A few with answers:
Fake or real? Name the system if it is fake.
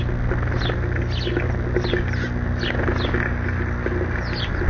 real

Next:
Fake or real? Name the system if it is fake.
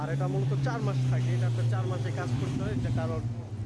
real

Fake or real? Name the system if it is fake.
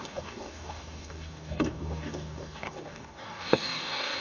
fake, codec, DAC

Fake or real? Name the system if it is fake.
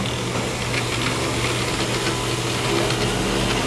real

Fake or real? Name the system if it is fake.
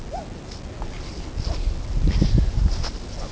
real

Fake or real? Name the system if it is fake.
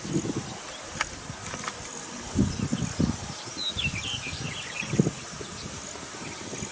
real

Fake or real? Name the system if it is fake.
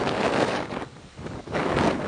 fake, codec, DAC